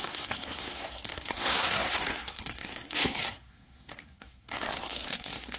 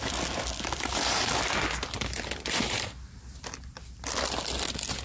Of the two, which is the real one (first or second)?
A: second